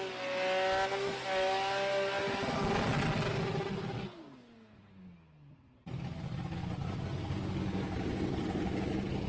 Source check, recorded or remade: recorded